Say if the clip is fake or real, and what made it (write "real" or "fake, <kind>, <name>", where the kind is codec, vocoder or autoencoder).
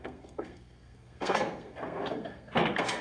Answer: fake, codec, SNAC